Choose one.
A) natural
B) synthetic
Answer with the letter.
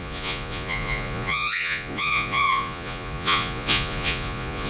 B